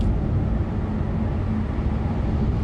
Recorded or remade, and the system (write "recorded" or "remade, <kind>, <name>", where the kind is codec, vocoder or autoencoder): recorded